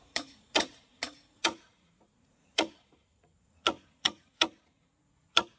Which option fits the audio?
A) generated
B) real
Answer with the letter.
A